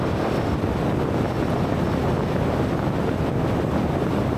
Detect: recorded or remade recorded